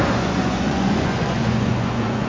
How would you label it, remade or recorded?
remade